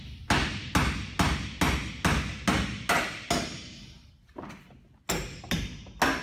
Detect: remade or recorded recorded